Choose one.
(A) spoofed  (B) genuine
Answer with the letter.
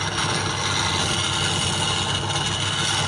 B